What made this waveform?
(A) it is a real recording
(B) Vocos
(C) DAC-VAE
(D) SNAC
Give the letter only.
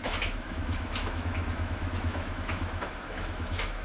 C